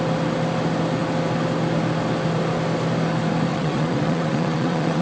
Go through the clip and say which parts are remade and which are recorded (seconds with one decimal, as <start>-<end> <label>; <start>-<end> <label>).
0.0-3.5 recorded; 3.5-5.0 remade